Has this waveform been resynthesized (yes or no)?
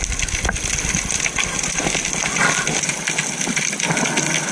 no